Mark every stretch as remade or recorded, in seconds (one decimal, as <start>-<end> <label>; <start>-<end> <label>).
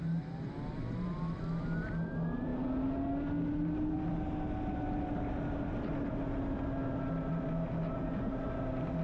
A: 0.0-9.0 recorded